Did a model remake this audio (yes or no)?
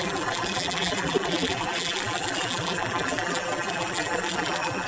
yes